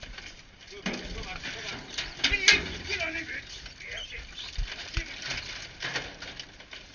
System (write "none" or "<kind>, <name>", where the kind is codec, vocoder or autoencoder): none